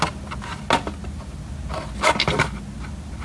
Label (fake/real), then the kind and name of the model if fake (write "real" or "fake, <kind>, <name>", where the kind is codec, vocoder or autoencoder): real